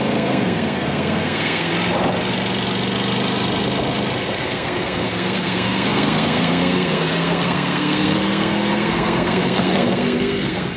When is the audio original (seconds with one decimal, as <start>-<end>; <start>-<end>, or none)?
1.7-4.4